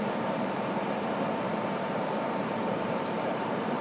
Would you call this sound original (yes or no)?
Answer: no